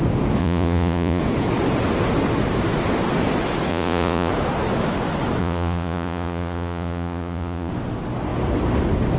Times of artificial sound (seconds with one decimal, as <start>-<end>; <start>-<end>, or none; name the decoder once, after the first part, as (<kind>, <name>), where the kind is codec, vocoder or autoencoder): 0.4-1.2 (vocoder, Vocos); 3.7-4.3; 5.4-7.7